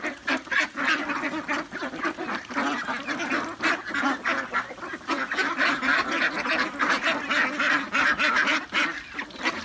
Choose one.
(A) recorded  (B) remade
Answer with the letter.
A